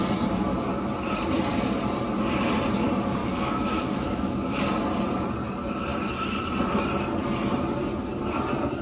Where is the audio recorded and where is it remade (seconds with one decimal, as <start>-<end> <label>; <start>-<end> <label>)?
0.0-3.2 recorded; 3.2-4.6 remade; 4.6-8.8 recorded